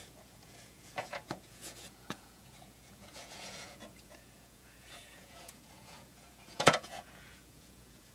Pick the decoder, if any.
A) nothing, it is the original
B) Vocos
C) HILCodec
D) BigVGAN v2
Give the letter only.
B